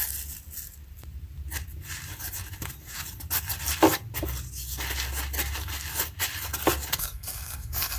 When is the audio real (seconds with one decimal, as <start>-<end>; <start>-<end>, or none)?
0.0-6.9